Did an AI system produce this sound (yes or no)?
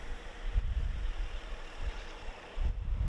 yes